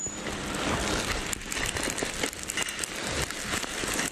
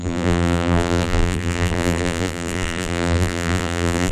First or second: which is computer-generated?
second